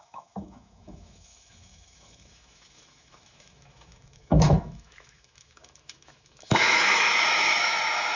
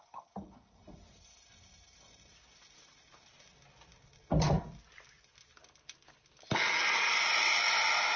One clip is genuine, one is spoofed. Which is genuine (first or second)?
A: second